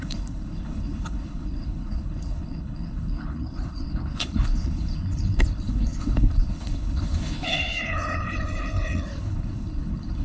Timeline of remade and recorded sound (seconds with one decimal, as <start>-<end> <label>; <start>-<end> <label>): 0.0-10.2 remade